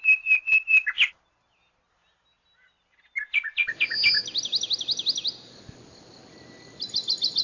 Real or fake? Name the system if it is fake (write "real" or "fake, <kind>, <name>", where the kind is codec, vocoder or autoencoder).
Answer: real